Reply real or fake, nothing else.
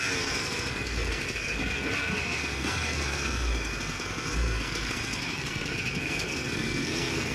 fake